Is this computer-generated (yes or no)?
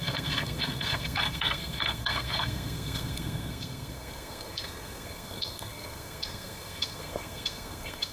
yes